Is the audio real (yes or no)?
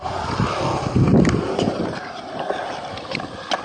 yes